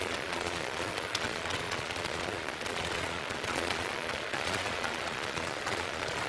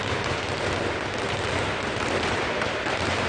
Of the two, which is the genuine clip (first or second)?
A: second